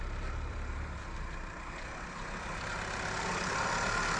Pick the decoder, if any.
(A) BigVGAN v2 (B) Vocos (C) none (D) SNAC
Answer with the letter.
C